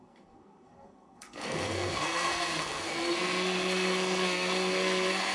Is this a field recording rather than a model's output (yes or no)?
no